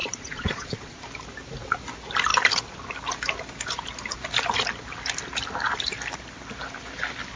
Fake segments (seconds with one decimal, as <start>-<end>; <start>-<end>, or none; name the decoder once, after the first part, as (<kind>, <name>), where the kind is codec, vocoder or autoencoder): 0.0-1.0 (vocoder, Vocos)